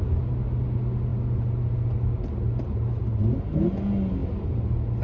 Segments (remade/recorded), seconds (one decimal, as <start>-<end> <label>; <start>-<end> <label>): 0.0-5.0 recorded